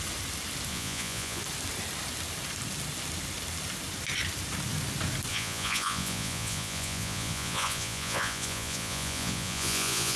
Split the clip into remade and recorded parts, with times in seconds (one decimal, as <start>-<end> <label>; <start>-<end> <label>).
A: 0.0-0.7 recorded; 0.7-1.4 remade; 1.4-5.3 recorded; 5.3-10.2 remade